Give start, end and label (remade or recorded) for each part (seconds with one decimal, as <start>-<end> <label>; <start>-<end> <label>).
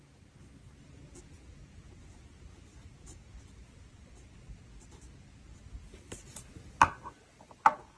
0.0-8.0 recorded